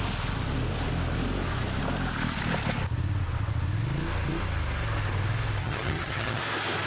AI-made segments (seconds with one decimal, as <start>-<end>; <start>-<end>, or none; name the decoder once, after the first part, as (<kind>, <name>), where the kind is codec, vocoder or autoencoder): 5.6-6.4 (vocoder, HiFi-GAN)